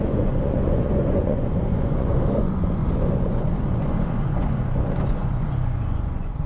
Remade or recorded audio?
remade